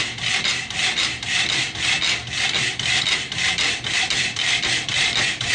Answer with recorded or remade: recorded